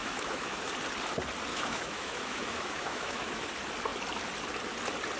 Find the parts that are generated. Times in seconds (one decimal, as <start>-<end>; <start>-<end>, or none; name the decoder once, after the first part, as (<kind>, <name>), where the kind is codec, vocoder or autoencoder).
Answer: 0.0-0.7 (autoencoder, DAC-VAE); 1.5-3.5